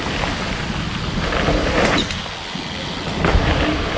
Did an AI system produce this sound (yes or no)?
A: no